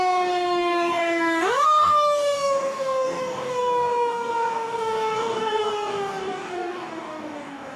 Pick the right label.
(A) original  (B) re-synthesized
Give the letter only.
B